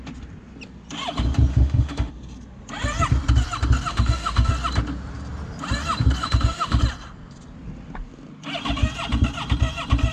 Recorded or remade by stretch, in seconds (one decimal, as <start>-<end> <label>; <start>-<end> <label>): 0.0-1.5 recorded; 1.5-2.1 remade; 2.1-3.9 recorded; 3.9-4.5 remade; 4.5-6.2 recorded; 6.2-6.8 remade; 6.8-10.1 recorded